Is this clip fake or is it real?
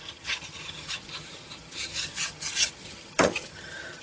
fake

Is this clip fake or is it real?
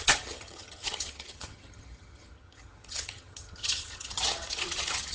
fake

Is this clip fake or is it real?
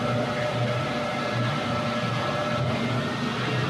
real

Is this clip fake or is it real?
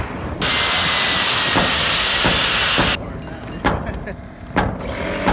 real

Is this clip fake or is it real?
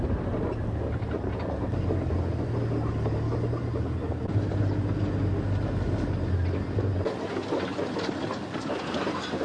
real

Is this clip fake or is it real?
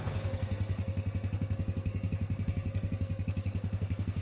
fake